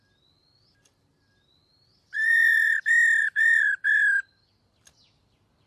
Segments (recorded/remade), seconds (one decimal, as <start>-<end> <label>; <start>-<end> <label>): 0.0-1.7 recorded; 1.7-2.8 remade; 2.8-3.2 recorded; 3.2-4.0 remade; 4.0-5.7 recorded